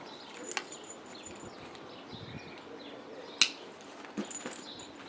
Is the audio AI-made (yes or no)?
no